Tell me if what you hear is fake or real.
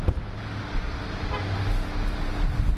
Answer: real